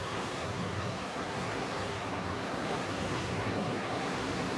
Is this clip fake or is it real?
fake